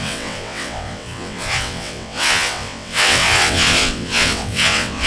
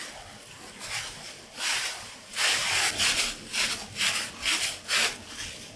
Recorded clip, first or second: second